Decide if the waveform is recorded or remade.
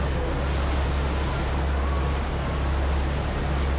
recorded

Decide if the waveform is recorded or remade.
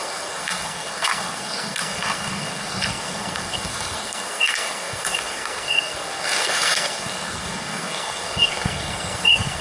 remade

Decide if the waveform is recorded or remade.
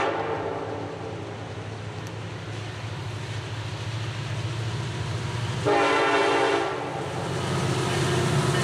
recorded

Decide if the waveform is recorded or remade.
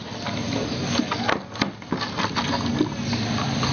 recorded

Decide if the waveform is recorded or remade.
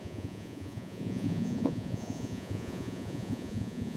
remade